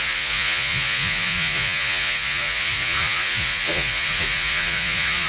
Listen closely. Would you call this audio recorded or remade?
remade